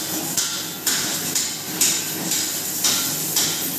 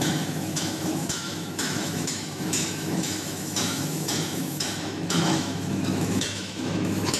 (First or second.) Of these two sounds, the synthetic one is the second